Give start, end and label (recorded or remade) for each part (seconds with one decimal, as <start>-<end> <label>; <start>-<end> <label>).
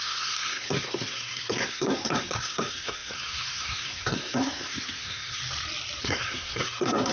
0.0-5.4 remade; 5.4-6.0 recorded; 6.0-7.1 remade